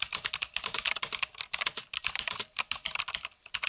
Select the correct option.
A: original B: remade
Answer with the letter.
B